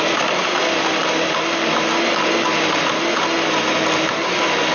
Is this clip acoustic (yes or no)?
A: yes